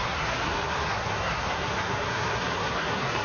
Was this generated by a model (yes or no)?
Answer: yes